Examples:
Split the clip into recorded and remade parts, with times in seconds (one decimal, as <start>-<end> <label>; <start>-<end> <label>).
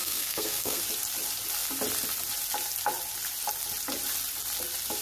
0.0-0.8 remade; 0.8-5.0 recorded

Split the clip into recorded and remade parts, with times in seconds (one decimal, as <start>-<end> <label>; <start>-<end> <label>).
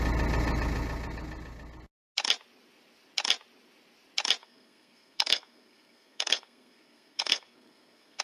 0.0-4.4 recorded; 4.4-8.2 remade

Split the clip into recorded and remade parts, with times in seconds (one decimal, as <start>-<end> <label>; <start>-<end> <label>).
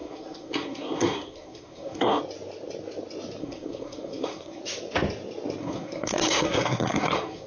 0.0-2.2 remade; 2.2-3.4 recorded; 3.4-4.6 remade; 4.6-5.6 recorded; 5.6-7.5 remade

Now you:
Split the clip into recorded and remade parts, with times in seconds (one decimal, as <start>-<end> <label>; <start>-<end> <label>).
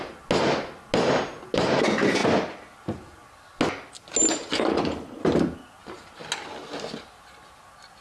0.0-4.7 recorded; 4.7-5.2 remade; 5.2-8.0 recorded